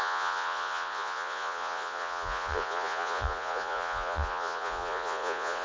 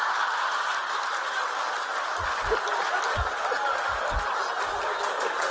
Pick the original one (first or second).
second